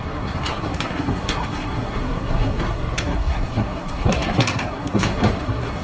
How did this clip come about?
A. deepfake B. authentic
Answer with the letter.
A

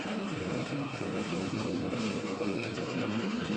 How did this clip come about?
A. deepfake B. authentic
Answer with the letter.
A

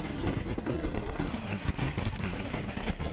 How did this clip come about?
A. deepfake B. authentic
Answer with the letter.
A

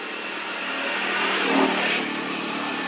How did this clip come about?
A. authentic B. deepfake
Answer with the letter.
A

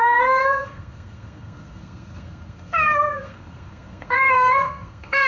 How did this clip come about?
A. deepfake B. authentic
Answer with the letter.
A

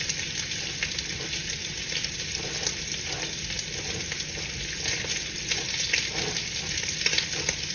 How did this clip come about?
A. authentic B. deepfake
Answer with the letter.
A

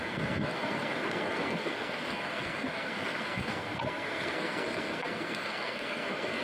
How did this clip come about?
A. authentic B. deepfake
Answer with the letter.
B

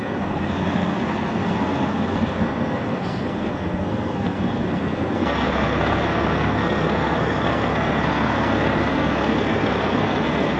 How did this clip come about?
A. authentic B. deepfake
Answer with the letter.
B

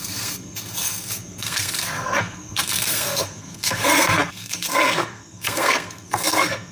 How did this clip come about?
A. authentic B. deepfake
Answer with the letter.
B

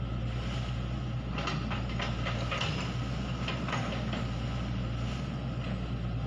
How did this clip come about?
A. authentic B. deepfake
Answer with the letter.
A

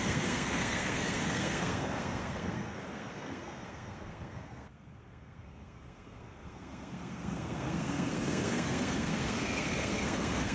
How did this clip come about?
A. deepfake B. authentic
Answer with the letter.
A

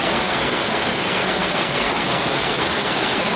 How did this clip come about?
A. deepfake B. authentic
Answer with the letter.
A